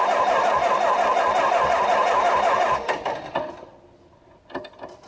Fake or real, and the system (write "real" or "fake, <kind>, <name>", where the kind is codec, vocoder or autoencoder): real